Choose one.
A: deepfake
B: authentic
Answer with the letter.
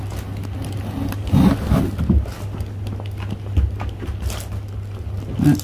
B